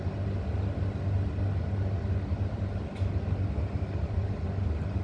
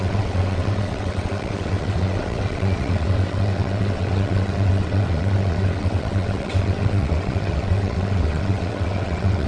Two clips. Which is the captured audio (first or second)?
first